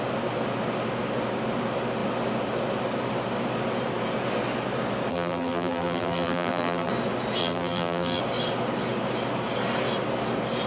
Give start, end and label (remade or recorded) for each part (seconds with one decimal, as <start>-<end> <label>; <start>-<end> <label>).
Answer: 0.0-5.1 recorded; 5.1-6.9 remade; 6.9-7.4 recorded; 7.4-8.2 remade; 8.2-10.7 recorded